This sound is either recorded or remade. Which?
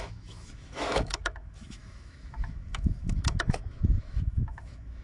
remade